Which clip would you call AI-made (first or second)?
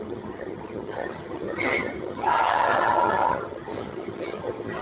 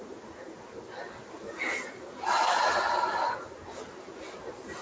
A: first